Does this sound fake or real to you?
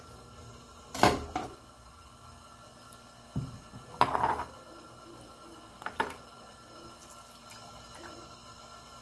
real